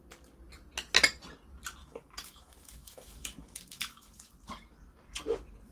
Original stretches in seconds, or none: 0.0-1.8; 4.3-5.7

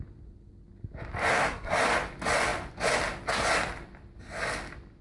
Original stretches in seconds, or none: 0.0-1.3; 1.8-5.0

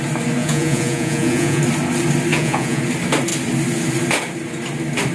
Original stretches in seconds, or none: 0.0-0.4; 1.6-2.3; 2.8-5.1

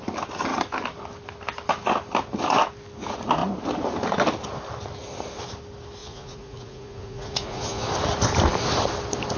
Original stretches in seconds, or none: 0.0-6.0; 7.9-9.4

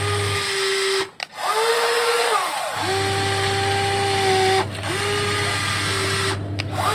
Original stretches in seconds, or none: 0.0-1.7; 2.5-6.9

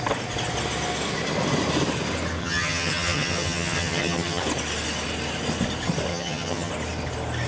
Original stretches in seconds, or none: 0.0-2.4; 4.4-6.1; 6.7-7.5

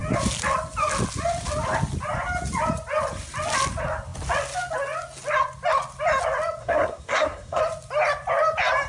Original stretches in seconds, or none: 0.0-6.6; 7.6-8.9